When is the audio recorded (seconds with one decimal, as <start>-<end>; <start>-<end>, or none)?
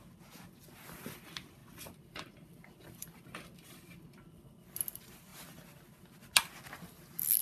0.0-1.6; 4.3-5.3; 5.8-7.4